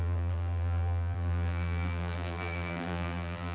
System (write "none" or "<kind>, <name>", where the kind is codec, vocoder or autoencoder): vocoder, BigVGAN v2